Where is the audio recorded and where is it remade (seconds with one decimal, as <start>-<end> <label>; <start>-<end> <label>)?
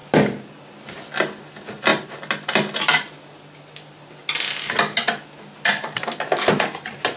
0.0-7.2 recorded